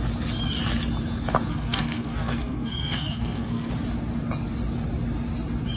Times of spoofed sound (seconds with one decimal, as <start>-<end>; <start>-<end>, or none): 1.5-3.7